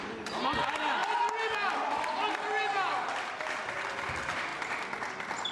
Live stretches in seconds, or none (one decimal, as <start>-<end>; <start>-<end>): 0.0-5.5

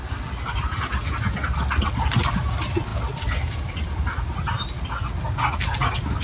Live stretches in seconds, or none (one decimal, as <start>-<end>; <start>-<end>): 0.0-6.2

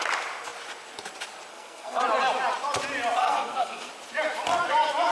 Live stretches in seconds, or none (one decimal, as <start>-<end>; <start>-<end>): 0.0-1.5; 2.0-3.2; 3.9-5.1

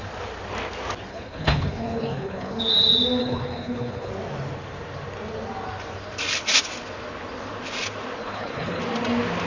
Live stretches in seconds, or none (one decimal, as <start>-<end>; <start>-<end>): 0.0-1.1; 2.6-3.2; 4.1-8.2; 8.8-9.5

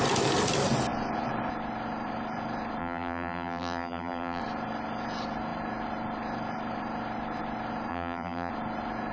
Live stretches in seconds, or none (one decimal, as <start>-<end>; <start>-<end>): 0.0-2.8; 4.4-7.9; 8.5-9.1